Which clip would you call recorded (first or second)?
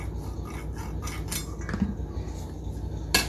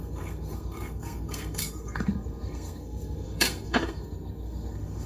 first